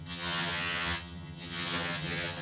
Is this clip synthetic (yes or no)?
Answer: yes